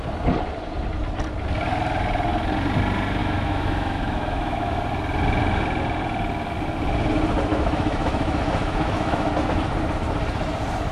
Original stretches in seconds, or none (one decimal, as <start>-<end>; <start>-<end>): 0.0-3.2; 4.8-7.5; 9.3-10.9